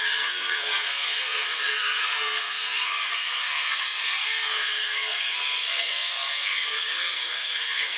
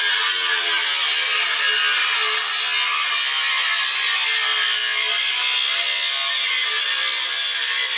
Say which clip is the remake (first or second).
first